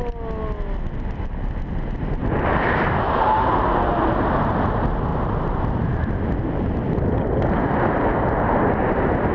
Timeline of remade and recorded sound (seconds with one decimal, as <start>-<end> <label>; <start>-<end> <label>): 0.0-5.1 recorded; 5.1-5.6 remade; 5.6-9.3 recorded